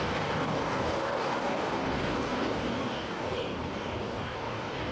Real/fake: fake